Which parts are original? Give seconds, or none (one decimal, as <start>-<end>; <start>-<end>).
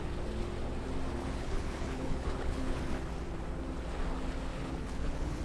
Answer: 0.0-1.2; 2.8-4.5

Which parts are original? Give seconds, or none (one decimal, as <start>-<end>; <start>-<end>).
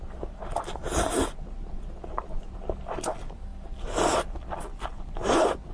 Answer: 0.0-5.7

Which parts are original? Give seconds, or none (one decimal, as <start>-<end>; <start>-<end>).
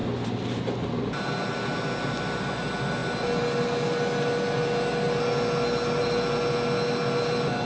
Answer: 0.0-7.7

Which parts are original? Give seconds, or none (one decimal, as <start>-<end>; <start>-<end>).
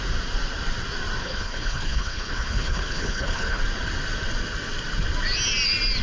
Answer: 0.0-1.2; 3.6-6.0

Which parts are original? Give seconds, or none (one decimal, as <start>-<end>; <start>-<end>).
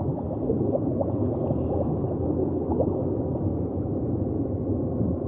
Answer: 0.0-0.5; 1.4-1.9; 3.0-5.3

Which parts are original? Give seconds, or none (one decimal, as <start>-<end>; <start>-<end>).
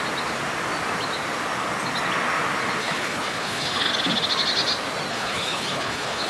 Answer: 0.0-2.8; 3.9-5.1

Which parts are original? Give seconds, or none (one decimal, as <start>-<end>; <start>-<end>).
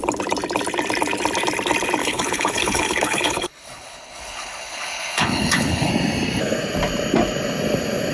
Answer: 0.0-2.0; 5.9-8.1